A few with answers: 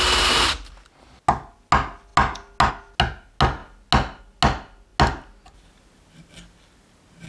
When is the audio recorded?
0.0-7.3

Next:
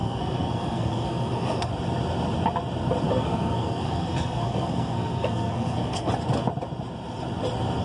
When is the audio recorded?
1.7-3.1; 6.1-7.8